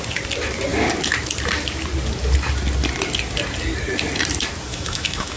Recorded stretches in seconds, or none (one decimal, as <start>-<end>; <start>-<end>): 0.0-4.7